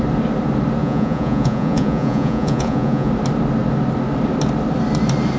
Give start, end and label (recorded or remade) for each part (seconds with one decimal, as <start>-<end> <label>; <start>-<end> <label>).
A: 0.0-0.8 recorded; 0.8-3.1 remade; 3.1-5.4 recorded